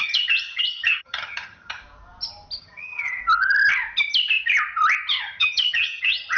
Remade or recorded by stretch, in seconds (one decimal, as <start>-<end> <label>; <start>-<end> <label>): 0.0-1.8 remade; 1.8-2.6 recorded; 2.6-3.2 remade; 3.2-5.2 recorded; 5.2-6.4 remade